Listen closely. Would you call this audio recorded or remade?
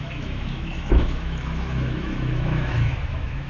remade